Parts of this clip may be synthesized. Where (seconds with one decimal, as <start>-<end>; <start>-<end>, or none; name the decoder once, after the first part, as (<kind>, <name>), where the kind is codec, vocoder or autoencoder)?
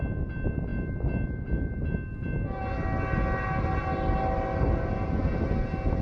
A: none